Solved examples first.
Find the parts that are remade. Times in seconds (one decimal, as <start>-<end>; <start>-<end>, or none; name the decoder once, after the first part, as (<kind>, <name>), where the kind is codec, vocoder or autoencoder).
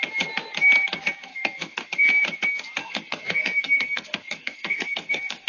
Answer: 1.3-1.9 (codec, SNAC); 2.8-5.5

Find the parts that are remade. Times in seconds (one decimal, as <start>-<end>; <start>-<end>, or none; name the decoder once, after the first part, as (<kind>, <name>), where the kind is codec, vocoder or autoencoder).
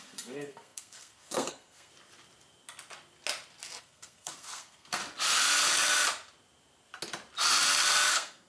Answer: 0.0-1.9 (codec, SNAC); 3.8-5.0; 8.1-8.5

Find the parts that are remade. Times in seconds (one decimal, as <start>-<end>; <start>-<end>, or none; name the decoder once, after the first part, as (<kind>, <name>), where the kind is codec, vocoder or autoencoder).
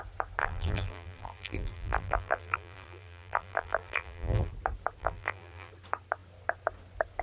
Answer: 0.4-4.5 (vocoder, BigVGAN v2); 5.0-5.7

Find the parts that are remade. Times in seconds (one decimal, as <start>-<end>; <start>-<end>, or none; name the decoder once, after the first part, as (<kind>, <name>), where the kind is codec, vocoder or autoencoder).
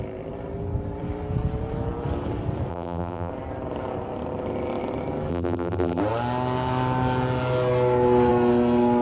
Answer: 2.7-3.3 (vocoder, BigVGAN v2); 5.3-6.0